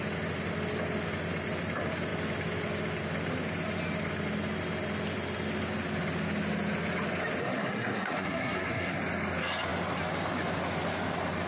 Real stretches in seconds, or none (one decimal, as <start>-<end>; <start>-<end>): 0.0-7.4; 9.0-11.5